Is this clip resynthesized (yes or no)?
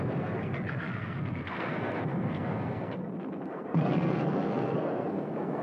yes